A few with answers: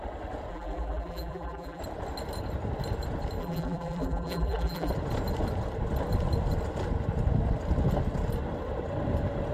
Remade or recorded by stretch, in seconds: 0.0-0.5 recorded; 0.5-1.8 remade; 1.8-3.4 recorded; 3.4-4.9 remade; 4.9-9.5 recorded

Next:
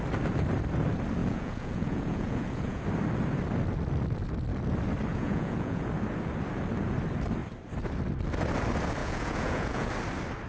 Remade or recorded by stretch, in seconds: 0.0-1.2 recorded; 1.2-2.8 remade; 2.8-5.1 recorded; 5.1-5.9 remade; 5.9-9.0 recorded; 9.0-9.9 remade; 9.9-10.5 recorded

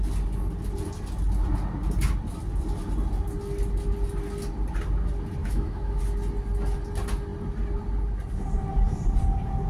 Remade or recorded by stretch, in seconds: 0.0-5.4 recorded; 5.4-6.0 remade; 6.0-9.7 recorded

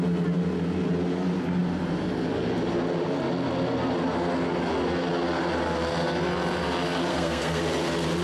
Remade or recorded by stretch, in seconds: 0.0-7.1 recorded; 7.1-7.6 remade; 7.6-8.2 recorded

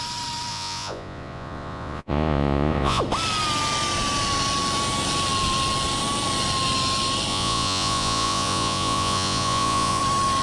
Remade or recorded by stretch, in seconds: 0.0-0.5 recorded; 0.5-3.0 remade; 3.0-7.3 recorded; 7.3-10.0 remade; 10.0-10.4 recorded

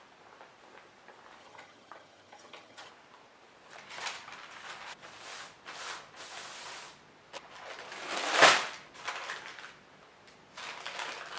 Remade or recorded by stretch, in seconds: 0.0-1.4 recorded; 1.4-2.9 remade; 2.9-11.4 recorded

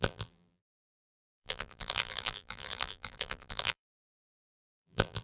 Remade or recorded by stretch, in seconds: 0.0-5.2 remade

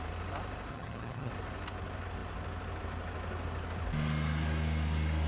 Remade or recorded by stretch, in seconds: 0.0-0.7 recorded; 0.7-1.3 remade; 1.3-5.3 recorded